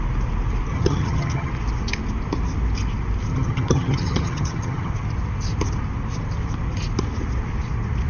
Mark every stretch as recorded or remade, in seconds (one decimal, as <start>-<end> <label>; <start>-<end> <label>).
0.0-0.7 recorded; 0.7-1.5 remade; 1.5-3.3 recorded; 3.3-4.9 remade; 4.9-8.1 recorded